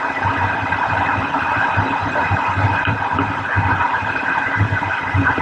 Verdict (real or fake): fake